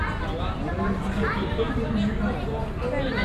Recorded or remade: recorded